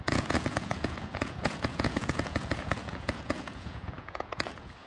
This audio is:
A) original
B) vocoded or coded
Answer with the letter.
B